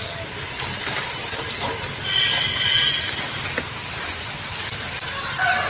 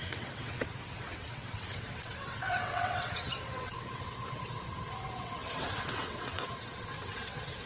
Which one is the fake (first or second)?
second